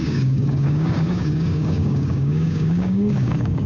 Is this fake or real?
fake